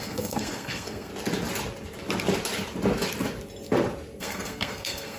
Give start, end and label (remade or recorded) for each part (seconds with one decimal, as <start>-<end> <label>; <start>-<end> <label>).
0.0-1.1 remade; 1.1-4.2 recorded; 4.2-5.2 remade